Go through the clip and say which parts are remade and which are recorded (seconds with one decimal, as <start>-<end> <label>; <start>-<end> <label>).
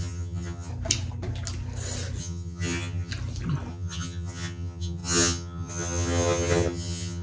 0.0-0.7 remade; 0.7-2.2 recorded; 2.2-3.1 remade; 3.1-3.7 recorded; 3.7-7.2 remade